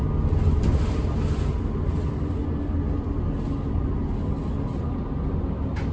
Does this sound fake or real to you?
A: real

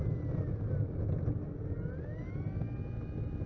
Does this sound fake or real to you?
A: real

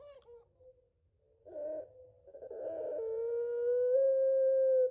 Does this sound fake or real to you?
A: real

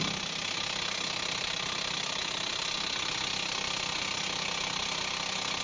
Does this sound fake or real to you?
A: real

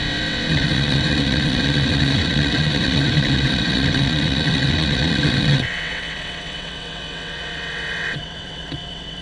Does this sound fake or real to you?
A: fake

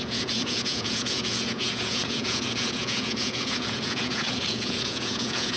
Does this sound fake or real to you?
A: fake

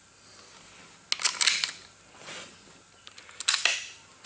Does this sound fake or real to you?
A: real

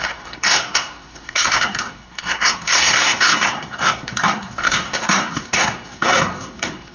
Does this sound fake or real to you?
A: fake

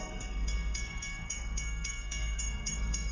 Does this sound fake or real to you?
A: fake